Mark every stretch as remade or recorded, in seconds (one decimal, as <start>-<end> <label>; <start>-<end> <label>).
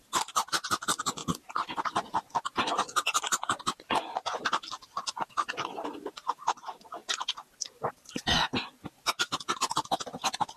0.0-10.6 recorded